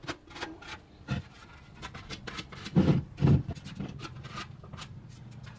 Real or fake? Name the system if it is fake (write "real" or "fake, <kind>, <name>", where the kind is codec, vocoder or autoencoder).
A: real